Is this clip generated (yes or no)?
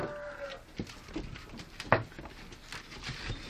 no